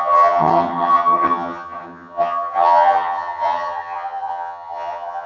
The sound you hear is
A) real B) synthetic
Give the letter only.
B